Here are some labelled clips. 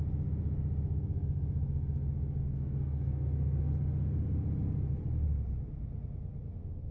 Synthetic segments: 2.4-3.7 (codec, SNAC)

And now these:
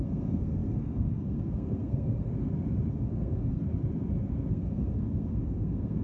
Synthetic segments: 0.0-2.3 (codec, SNAC); 2.9-3.6; 4.5-6.0

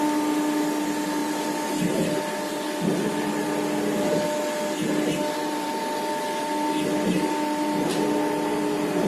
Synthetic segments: none